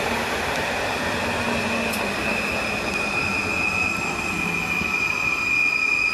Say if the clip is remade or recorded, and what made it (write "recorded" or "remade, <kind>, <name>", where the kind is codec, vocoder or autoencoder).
recorded